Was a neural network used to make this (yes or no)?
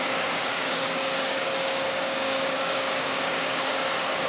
yes